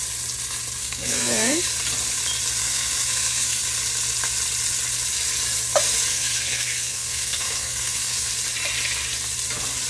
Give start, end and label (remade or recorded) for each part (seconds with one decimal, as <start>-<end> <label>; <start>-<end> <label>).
0.0-0.8 recorded; 0.8-1.6 remade; 1.6-2.6 recorded; 2.6-3.6 remade; 3.6-6.1 recorded; 6.1-8.3 remade; 8.3-9.9 recorded